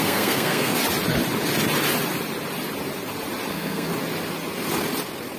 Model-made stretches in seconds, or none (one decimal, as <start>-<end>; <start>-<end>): 0.0-0.8; 3.5-3.9